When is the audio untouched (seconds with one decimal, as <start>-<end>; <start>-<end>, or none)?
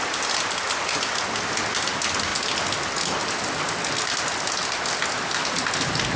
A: 0.0-6.2